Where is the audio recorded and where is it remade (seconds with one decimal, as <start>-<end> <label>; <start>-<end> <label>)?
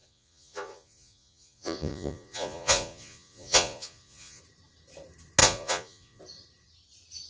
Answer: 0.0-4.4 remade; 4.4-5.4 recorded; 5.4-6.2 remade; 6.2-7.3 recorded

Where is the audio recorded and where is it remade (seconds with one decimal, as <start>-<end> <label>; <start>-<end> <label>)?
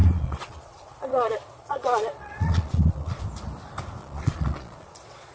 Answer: 0.0-3.2 remade; 3.2-4.0 recorded; 4.0-5.3 remade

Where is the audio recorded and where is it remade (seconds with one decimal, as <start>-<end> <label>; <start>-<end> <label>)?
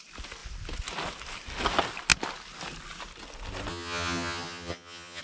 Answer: 0.0-3.7 recorded; 3.7-5.2 remade